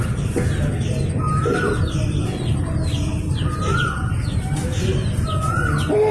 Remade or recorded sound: recorded